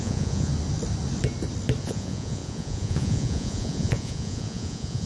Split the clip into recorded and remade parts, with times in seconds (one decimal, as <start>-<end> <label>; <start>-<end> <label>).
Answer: 0.0-0.5 remade; 0.5-1.8 recorded; 1.8-5.1 remade

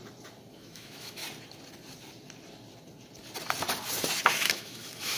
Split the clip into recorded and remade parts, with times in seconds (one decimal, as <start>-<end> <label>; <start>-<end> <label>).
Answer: 0.0-0.5 recorded; 0.5-1.2 remade; 1.2-4.3 recorded; 4.3-5.2 remade

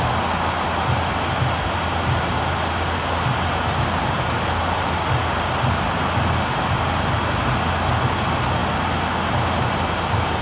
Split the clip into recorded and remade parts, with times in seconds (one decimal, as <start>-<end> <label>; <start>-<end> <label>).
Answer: 0.0-10.4 recorded

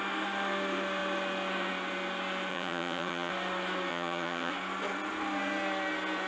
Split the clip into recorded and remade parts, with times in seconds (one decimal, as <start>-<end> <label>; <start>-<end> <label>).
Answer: 0.0-2.5 recorded; 2.5-3.3 remade; 3.3-3.9 recorded; 3.9-4.5 remade; 4.5-6.3 recorded

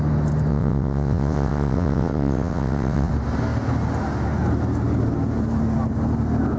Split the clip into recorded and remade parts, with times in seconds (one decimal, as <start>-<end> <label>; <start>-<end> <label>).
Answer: 0.0-0.5 recorded; 0.5-3.1 remade; 3.1-6.6 recorded